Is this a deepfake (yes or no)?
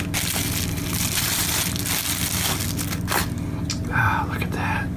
no